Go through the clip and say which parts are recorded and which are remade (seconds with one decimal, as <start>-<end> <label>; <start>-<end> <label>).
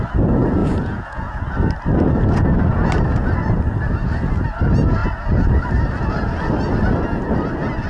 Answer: 0.0-0.6 recorded; 0.6-1.4 remade; 1.4-7.9 recorded